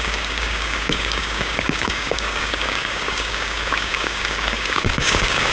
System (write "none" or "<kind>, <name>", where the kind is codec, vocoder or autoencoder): codec, DAC